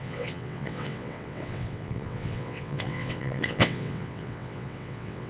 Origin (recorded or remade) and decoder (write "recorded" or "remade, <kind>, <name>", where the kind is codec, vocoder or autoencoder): remade, vocoder, WaveNeXt